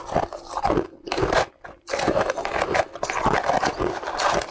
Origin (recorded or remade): recorded